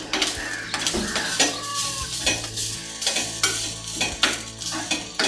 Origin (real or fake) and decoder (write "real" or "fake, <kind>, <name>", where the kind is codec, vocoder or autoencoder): real